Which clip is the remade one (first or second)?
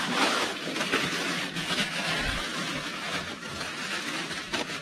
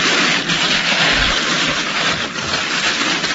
first